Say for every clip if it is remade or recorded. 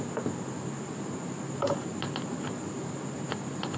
recorded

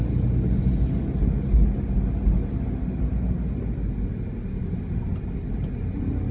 recorded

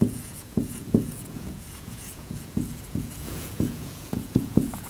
remade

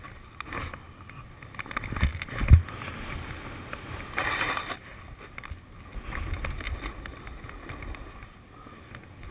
recorded